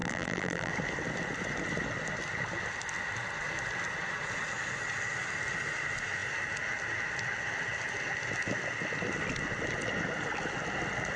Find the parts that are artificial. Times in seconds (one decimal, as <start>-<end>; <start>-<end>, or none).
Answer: 0.0-0.7